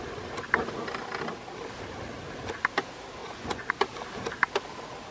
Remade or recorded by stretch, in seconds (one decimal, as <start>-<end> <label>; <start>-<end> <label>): 0.0-3.2 recorded; 3.2-3.7 remade; 3.7-5.1 recorded